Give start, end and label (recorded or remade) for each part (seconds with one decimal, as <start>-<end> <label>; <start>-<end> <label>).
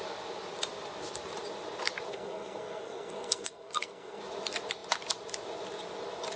0.0-2.1 recorded; 2.1-4.2 remade; 4.2-6.4 recorded